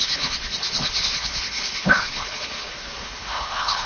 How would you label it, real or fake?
fake